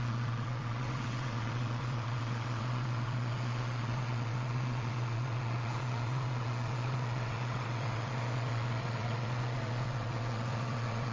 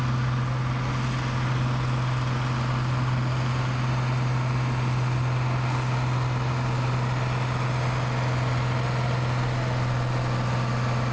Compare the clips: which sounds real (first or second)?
second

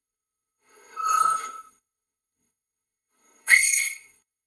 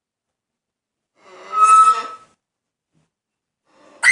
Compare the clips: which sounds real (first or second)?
second